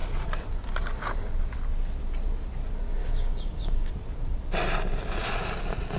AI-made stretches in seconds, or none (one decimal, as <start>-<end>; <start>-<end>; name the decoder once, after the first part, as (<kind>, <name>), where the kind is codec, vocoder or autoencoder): 3.0-3.9 (codec, DAC)

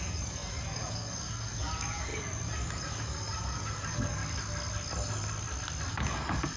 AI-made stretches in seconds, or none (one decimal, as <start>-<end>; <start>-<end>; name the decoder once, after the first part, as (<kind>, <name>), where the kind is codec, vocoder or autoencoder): 0.0-4.2 (codec, DAC); 5.9-6.6